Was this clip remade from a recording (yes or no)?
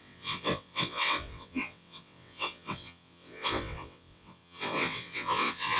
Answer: yes